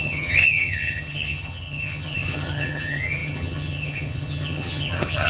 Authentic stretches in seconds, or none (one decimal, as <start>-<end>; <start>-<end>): none